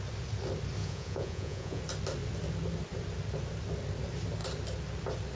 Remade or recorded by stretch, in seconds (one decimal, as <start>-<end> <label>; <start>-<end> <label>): 0.0-0.8 recorded; 0.8-1.8 remade; 1.8-5.4 recorded